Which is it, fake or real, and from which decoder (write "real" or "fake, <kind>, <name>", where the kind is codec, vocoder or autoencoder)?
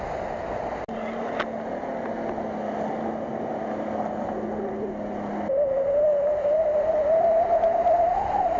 real